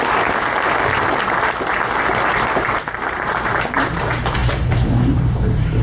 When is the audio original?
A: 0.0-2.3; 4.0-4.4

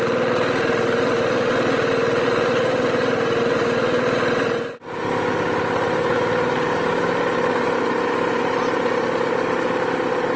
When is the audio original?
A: 0.0-10.4

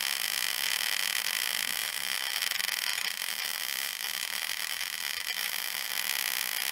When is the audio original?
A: 0.0-1.8; 2.4-2.9; 5.9-6.7

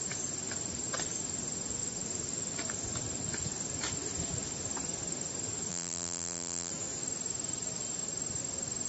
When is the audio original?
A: 0.0-5.7; 6.7-8.9